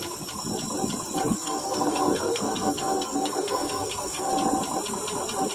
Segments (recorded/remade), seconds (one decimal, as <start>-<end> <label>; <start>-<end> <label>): 0.0-1.3 recorded; 1.3-4.3 remade; 4.3-5.5 recorded